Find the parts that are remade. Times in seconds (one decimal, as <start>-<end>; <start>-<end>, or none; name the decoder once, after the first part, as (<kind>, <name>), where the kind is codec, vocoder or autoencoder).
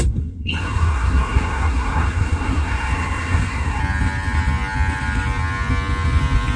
0.0-3.8 (codec, SNAC)